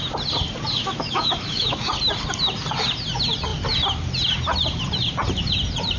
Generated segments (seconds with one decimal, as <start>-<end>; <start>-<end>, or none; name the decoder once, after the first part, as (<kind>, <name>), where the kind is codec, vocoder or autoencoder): 0.8-1.9 (autoencoder, DAC-VAE)